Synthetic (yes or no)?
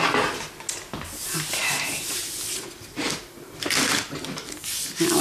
no